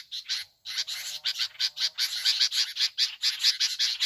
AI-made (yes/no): no